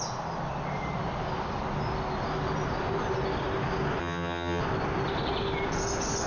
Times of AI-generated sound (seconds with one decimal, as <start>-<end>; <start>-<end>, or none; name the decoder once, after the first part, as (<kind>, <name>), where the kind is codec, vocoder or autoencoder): 4.0-4.6 (vocoder, HiFi-GAN)